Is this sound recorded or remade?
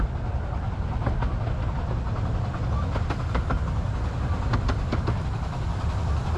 recorded